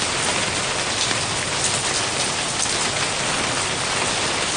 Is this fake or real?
real